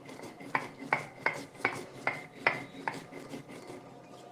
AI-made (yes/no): no